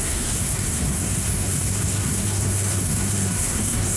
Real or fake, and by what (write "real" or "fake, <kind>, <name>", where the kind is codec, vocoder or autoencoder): fake, codec, SNAC